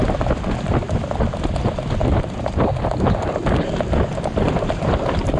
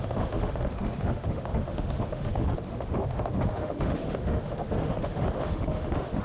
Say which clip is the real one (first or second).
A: first